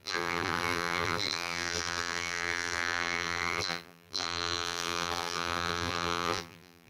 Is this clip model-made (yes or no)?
yes